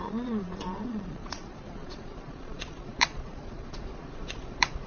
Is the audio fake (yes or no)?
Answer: yes